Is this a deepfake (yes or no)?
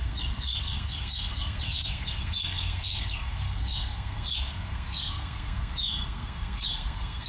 yes